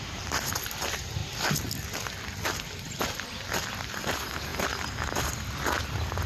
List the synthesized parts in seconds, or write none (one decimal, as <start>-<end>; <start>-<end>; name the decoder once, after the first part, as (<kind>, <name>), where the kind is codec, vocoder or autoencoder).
0.0-1.2 (vocoder, BigVGAN v2); 3.8-4.5